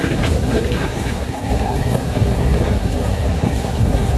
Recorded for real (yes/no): no